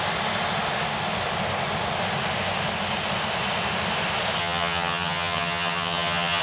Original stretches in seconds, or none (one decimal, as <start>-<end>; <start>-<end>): 0.0-4.4